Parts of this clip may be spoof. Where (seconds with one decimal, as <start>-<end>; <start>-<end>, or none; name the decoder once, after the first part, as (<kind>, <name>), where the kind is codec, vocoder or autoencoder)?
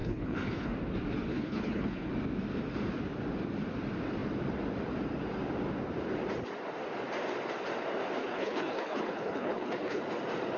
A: 0.0-0.7 (codec, HILCodec); 1.3-2.1; 8.2-10.0